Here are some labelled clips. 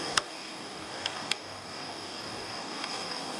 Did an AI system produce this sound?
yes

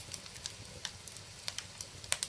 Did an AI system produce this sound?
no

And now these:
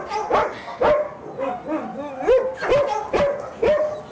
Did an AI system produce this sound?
no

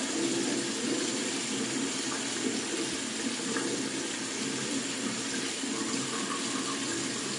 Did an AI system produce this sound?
no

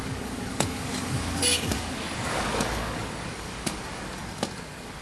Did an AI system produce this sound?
yes